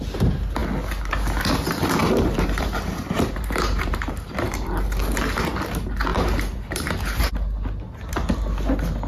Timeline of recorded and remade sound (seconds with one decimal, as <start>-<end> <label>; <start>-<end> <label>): 0.0-2.0 recorded; 2.0-5.0 remade; 5.0-6.1 recorded; 6.1-6.9 remade; 6.9-9.1 recorded